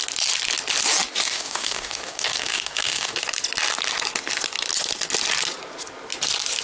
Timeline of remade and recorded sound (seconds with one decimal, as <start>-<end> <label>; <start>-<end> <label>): 0.0-1.2 recorded; 1.2-3.2 remade; 3.2-6.6 recorded